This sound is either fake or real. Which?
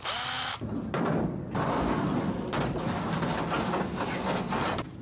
real